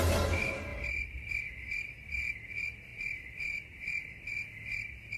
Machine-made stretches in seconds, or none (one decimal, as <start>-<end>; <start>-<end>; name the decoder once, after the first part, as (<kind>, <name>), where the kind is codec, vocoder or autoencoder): none